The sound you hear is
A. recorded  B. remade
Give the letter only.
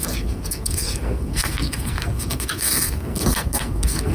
B